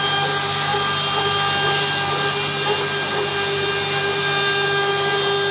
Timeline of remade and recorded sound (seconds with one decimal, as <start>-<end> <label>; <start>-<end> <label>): 0.0-5.5 recorded